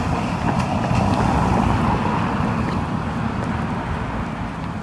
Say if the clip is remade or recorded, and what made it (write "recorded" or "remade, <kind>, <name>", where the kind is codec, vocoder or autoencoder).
recorded